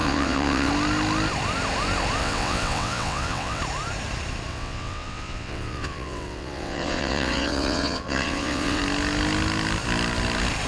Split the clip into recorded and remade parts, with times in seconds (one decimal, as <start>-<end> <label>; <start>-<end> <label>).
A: 0.0-0.7 remade; 0.7-2.2 recorded; 2.2-3.6 remade; 3.6-4.5 recorded; 4.5-8.8 remade; 8.8-10.7 recorded